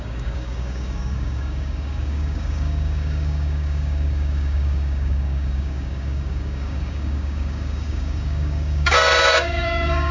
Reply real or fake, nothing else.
fake